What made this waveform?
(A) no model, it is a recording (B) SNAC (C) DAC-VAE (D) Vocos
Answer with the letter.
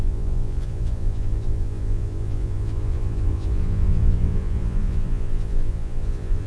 D